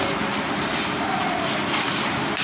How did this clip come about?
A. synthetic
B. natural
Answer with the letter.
B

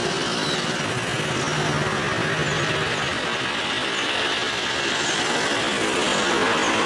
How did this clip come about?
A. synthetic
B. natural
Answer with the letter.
B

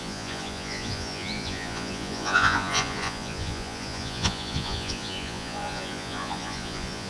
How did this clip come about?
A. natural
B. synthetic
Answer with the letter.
B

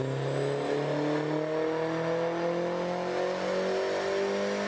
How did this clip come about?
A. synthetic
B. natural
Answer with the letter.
B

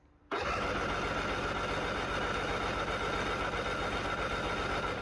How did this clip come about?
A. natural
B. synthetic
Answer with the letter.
A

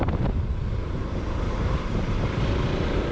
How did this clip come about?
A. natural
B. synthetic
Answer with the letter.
B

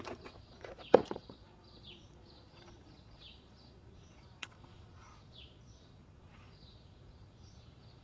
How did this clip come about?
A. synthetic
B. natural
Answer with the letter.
A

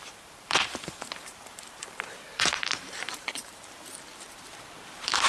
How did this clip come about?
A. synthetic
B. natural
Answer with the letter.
A